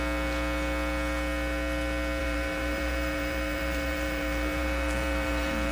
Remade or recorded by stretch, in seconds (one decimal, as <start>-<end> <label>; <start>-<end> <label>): 0.0-2.2 recorded; 2.2-5.7 remade